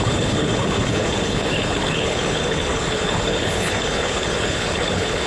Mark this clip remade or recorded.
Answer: remade